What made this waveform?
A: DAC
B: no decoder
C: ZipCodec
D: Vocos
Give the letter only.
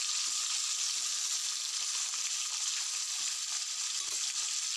B